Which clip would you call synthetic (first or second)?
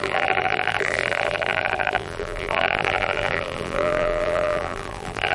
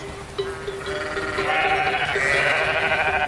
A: first